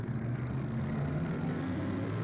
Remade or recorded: remade